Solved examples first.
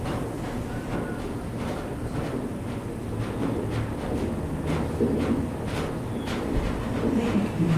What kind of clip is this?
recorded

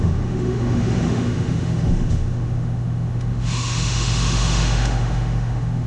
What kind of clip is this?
remade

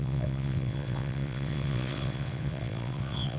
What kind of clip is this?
remade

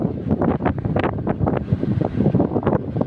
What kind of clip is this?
recorded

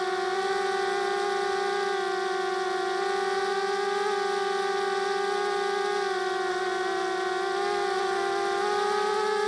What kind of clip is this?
recorded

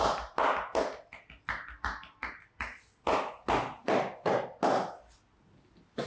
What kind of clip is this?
recorded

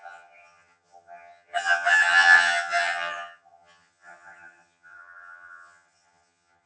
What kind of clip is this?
remade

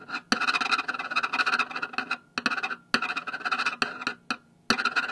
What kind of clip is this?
recorded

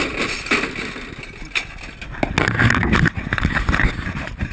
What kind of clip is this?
recorded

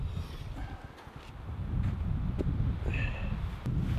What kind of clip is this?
recorded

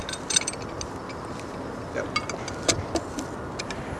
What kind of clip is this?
recorded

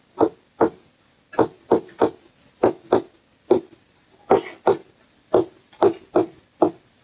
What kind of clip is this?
recorded